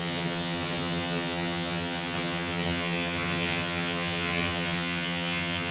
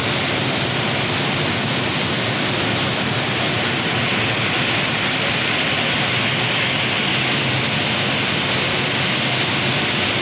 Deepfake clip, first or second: first